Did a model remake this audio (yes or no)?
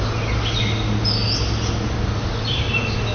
no